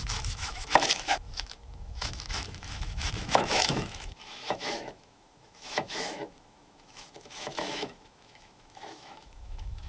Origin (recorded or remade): remade